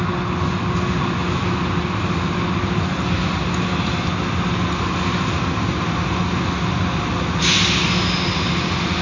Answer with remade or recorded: recorded